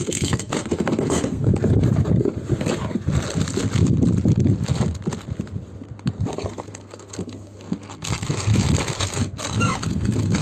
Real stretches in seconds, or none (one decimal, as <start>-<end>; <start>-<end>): 1.5-6.5; 8.5-9.0